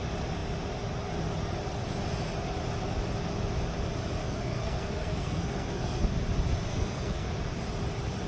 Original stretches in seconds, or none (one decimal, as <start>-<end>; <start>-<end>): 0.0-4.2; 6.1-6.7; 7.3-8.3